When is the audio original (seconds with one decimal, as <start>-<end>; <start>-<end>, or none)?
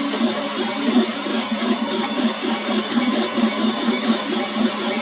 0.0-1.3; 4.3-5.0